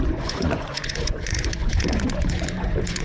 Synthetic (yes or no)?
yes